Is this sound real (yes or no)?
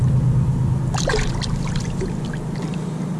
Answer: yes